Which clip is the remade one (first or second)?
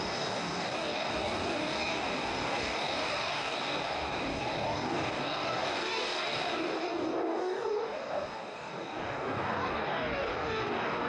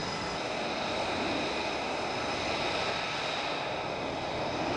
first